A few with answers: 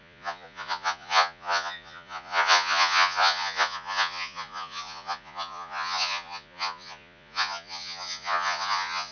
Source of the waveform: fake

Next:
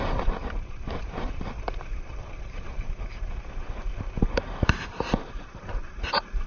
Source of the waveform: fake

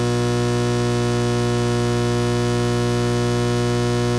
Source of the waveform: real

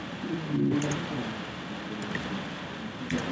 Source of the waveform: real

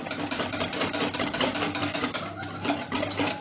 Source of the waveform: real